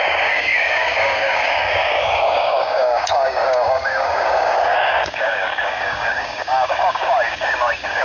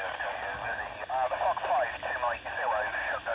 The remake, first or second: first